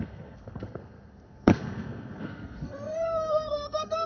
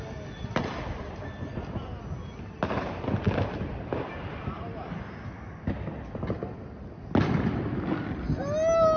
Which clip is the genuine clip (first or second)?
second